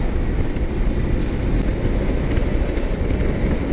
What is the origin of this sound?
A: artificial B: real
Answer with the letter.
B